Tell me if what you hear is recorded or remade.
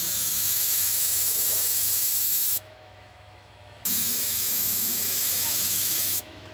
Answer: remade